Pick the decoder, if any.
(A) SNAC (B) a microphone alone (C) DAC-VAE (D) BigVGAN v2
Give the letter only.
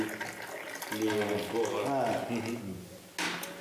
B